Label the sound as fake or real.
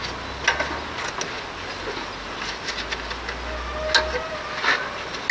real